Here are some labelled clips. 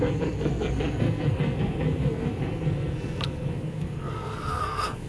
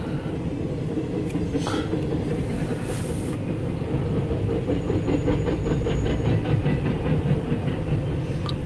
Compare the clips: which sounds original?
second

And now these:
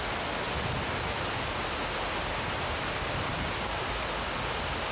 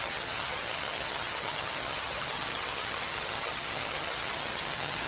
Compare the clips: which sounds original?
first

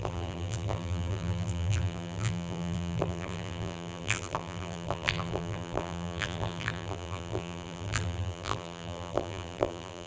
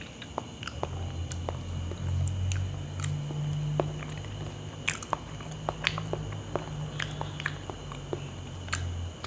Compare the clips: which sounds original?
second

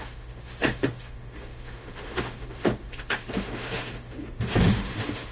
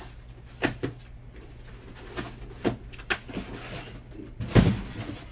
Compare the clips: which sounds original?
second